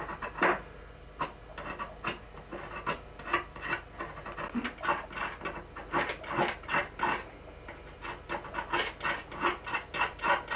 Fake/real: real